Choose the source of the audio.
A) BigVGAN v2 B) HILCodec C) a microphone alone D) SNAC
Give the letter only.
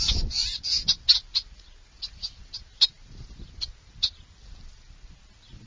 C